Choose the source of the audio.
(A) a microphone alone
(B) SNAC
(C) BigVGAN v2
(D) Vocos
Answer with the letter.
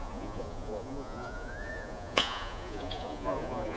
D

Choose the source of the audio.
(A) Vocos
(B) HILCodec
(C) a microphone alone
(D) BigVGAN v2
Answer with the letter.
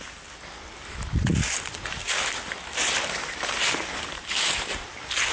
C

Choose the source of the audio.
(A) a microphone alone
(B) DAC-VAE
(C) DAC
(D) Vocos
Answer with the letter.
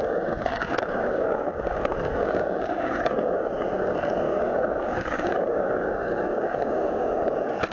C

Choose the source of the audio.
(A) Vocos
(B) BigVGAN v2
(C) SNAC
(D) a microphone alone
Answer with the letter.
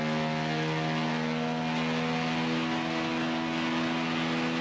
D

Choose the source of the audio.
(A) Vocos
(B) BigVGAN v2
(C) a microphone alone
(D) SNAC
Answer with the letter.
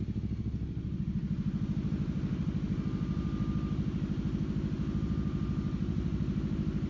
C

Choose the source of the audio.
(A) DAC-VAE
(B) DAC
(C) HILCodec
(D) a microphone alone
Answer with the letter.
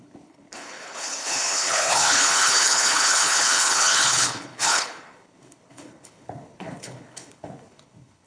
C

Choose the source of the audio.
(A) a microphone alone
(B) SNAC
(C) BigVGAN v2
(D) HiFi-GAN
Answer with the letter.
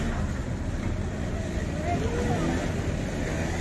A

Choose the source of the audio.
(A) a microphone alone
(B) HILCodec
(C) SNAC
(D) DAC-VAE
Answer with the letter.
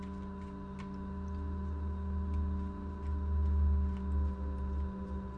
A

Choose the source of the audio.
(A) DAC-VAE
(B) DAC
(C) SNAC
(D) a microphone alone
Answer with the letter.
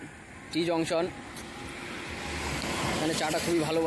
D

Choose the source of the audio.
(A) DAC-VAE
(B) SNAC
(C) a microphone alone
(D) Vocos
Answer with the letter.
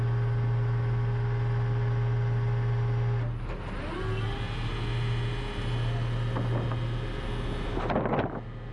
C